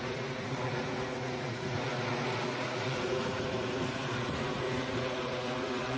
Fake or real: fake